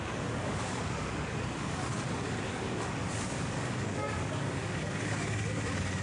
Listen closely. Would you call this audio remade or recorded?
remade